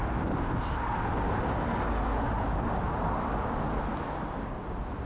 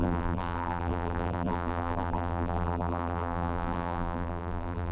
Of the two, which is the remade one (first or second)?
second